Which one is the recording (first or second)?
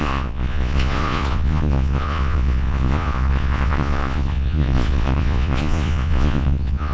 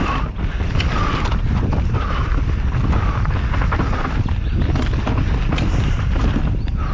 second